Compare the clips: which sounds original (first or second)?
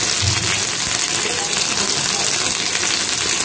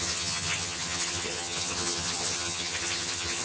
first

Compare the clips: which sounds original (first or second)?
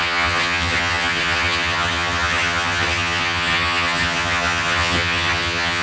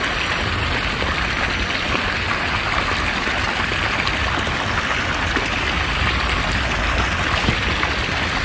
second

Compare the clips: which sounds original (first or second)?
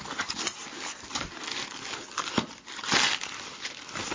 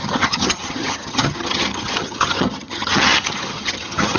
first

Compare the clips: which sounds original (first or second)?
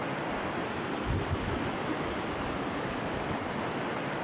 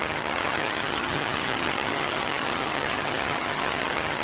first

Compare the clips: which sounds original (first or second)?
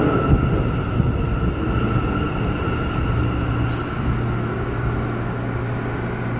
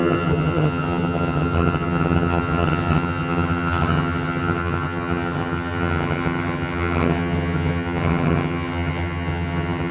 first